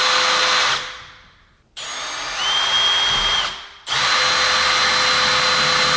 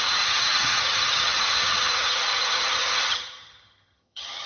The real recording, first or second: first